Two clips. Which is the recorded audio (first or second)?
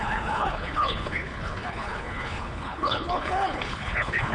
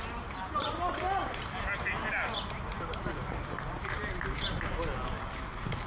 second